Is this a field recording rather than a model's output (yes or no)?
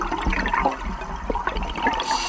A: yes